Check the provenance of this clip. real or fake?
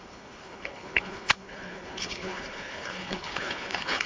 fake